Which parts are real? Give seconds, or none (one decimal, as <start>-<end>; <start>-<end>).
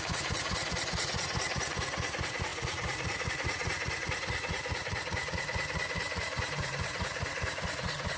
none